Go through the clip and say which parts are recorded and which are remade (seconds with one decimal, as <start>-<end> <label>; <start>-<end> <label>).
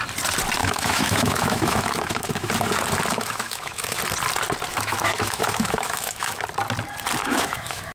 0.0-0.6 recorded; 0.6-2.5 remade; 2.5-3.1 recorded; 3.1-4.0 remade; 4.0-4.7 recorded; 4.7-6.4 remade; 6.4-7.2 recorded; 7.2-7.9 remade